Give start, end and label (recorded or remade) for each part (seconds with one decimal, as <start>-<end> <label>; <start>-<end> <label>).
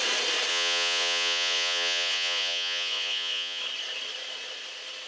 0.0-0.5 recorded; 0.5-3.6 remade; 3.6-5.1 recorded